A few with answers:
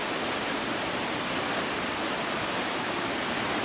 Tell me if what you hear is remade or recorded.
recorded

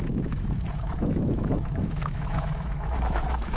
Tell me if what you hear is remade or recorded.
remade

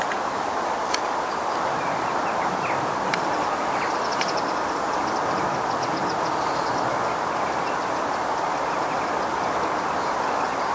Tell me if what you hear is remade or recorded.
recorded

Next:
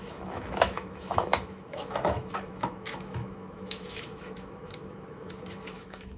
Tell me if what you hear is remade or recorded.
remade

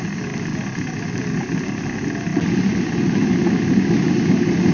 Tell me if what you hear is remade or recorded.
recorded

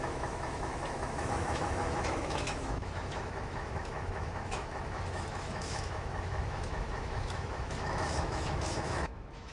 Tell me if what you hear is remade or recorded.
remade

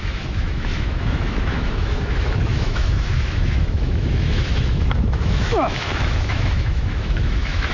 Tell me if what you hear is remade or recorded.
remade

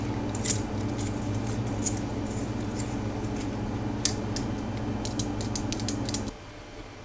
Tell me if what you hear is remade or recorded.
recorded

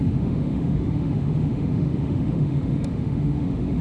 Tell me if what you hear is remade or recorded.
remade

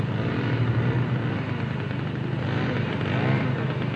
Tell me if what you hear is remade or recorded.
recorded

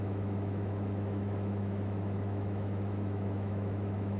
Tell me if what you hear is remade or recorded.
remade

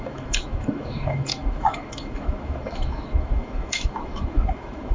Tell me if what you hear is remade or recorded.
remade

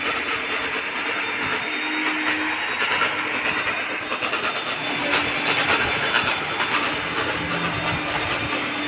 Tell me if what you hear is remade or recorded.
recorded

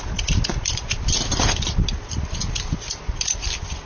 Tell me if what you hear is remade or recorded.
recorded